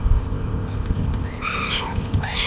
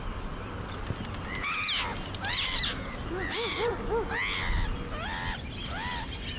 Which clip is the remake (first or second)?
first